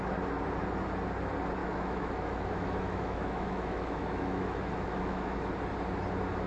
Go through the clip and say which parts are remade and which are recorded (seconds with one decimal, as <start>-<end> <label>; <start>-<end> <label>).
0.0-1.6 recorded; 1.6-5.5 remade; 5.5-6.5 recorded